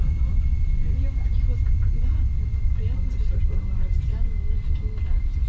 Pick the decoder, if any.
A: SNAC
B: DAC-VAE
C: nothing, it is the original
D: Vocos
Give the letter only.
C